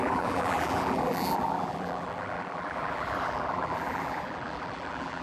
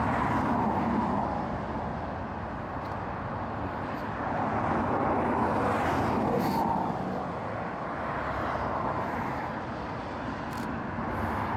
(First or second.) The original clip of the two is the second